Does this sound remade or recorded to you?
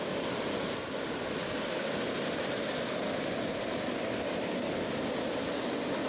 recorded